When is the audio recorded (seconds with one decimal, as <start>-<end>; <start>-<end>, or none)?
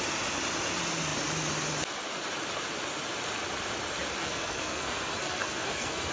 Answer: 0.0-4.2